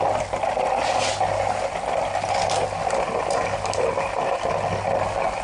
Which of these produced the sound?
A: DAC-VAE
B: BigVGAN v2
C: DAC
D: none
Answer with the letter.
D